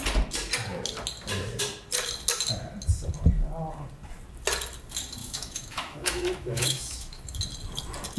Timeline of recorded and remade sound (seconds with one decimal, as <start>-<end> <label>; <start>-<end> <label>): 0.0-5.2 recorded; 5.2-7.2 remade; 7.2-8.2 recorded